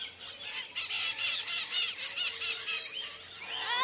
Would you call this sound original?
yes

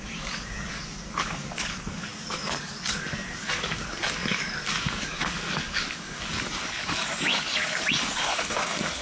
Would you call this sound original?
no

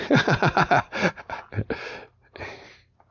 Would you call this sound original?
yes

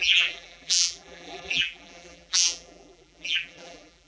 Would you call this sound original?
no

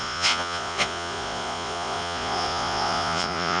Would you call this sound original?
no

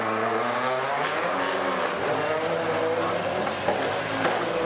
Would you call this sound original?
yes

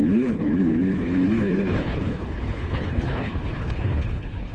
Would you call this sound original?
no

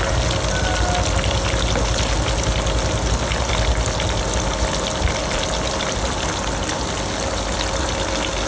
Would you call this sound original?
yes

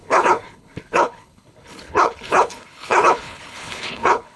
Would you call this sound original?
no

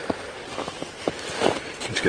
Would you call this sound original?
yes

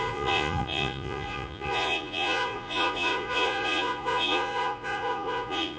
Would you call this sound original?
no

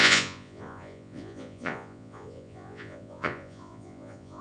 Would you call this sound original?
no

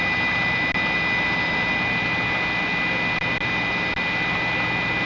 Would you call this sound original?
yes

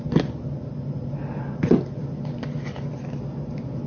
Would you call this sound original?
yes